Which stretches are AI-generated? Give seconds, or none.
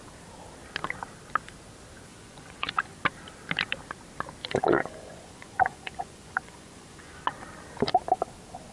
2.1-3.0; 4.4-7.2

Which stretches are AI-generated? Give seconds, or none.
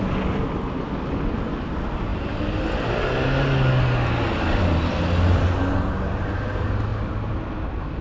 none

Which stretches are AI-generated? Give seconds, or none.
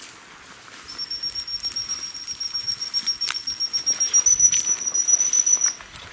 none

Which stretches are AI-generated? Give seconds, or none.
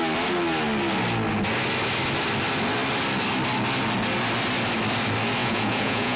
5.4-6.2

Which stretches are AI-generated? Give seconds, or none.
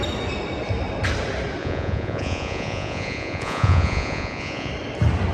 1.6-4.7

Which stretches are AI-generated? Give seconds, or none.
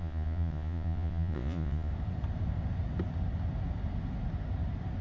0.0-1.9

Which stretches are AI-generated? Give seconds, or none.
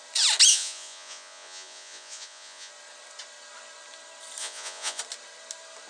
0.5-2.7; 4.4-5.0